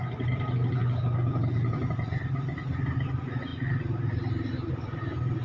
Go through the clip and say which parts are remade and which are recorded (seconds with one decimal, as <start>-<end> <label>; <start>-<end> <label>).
0.0-5.4 recorded